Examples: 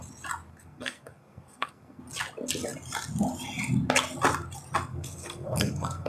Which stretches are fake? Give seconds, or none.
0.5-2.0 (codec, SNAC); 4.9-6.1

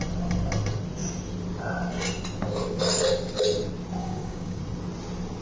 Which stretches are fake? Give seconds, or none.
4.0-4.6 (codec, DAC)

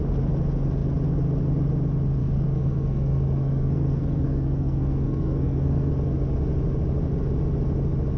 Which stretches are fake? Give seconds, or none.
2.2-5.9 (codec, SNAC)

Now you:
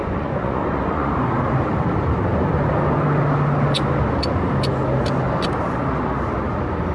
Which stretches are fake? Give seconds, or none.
0.0-1.1 (vocoder, Vocos)

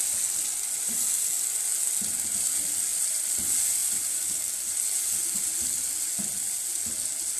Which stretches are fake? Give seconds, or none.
none

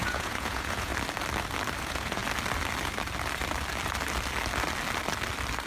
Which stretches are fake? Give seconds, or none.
0.0-0.9 (vocoder, Vocos); 1.8-2.2

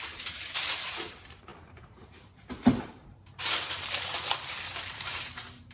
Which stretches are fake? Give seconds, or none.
0.0-5.7 (vocoder, BigVGAN v2)